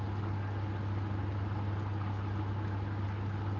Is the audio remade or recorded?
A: recorded